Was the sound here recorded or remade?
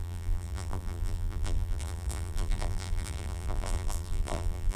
remade